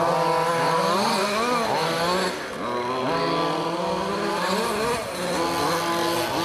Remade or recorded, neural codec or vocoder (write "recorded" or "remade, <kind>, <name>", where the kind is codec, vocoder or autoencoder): recorded